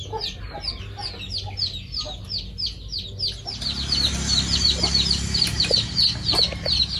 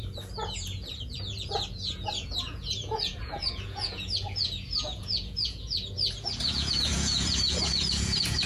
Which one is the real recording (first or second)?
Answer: first